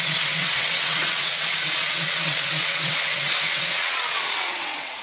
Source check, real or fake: fake